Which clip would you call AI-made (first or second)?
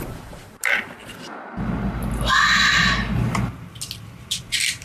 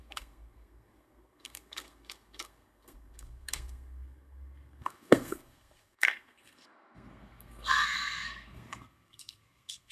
second